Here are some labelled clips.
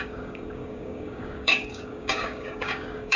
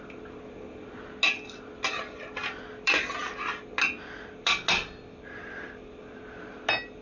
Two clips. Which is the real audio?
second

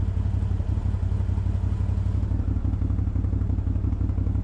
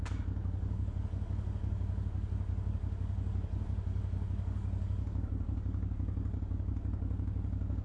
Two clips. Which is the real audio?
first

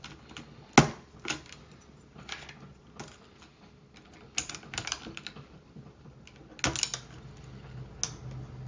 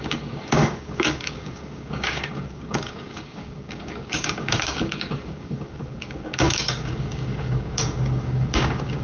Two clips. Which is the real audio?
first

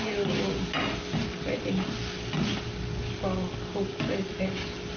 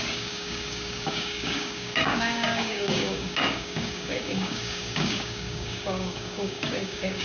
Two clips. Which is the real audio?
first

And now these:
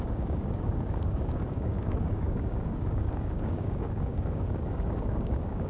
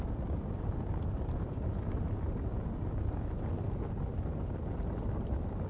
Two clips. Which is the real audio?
second